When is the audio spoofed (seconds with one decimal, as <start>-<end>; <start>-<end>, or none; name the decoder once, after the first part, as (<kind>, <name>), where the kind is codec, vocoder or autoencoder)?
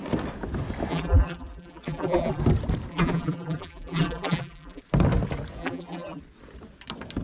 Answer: 0.9-2.4 (vocoder, BigVGAN v2); 2.9-4.8; 5.6-6.2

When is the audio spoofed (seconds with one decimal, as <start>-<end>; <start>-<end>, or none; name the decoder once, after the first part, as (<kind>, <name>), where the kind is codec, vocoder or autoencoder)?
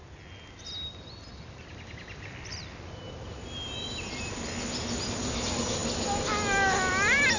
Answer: none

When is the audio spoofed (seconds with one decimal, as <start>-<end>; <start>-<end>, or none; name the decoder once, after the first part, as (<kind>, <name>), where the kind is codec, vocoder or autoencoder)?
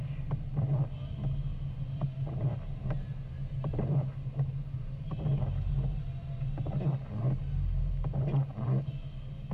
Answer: 1.5-2.8 (vocoder, BigVGAN v2); 3.4-5.2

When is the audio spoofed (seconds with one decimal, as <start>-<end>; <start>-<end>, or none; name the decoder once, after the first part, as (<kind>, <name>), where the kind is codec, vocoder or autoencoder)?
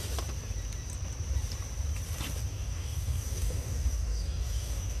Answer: 2.5-5.0 (codec, DAC)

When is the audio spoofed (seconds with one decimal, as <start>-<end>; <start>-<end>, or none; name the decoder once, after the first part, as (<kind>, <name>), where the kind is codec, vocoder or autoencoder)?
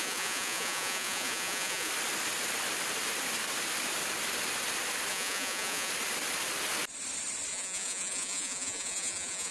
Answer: 0.0-1.9 (vocoder, Vocos); 5.1-5.9; 7.5-9.5